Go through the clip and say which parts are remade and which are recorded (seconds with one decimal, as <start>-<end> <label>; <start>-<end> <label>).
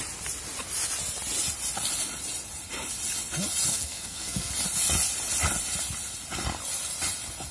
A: 0.0-3.7 recorded; 3.7-4.5 remade; 4.5-7.5 recorded